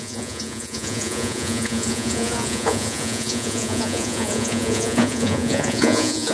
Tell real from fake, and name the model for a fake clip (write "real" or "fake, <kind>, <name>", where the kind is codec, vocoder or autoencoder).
fake, vocoder, Vocos